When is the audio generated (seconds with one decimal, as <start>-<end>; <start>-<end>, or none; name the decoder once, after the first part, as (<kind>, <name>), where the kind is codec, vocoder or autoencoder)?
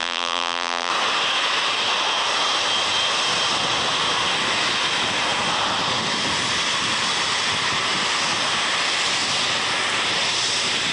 0.0-0.9 (vocoder, BigVGAN v2)